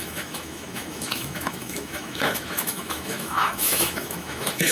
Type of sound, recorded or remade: remade